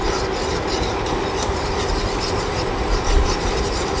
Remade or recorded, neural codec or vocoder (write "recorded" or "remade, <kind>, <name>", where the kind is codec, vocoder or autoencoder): remade, vocoder, BigVGAN v2